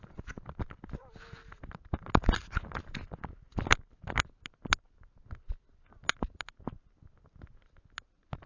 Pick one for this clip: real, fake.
real